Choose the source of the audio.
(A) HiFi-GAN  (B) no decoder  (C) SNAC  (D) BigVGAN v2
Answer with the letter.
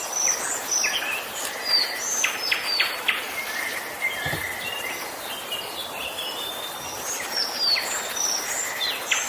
B